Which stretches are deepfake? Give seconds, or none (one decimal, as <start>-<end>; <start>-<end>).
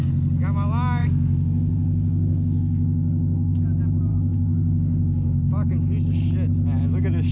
1.0-3.6; 4.1-5.5